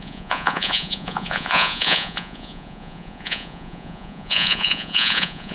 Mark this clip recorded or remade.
remade